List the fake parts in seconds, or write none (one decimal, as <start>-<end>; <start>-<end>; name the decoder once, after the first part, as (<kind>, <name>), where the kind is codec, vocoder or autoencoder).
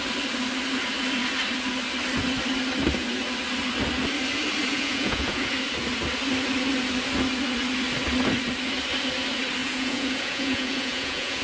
4.7-5.5 (vocoder, Vocos); 9.6-11.4